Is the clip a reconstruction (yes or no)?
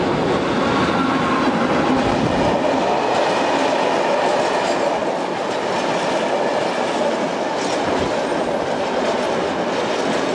no